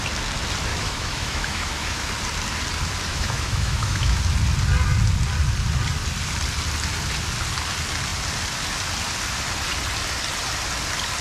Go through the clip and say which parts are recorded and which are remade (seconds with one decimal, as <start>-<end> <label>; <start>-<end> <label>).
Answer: 0.0-0.7 recorded; 0.7-2.1 remade; 2.1-3.1 recorded; 3.1-4.2 remade; 4.2-11.2 recorded